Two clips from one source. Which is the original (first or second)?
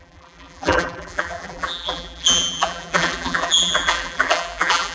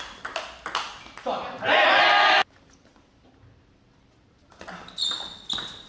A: second